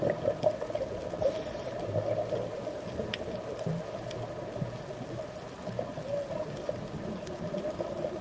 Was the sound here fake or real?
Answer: real